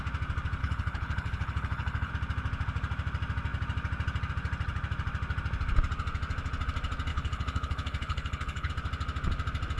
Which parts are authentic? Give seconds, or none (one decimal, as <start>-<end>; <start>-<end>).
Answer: 0.0-0.6; 2.1-7.1; 8.7-9.8